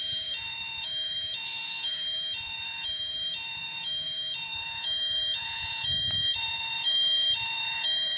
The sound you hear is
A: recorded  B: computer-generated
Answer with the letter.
B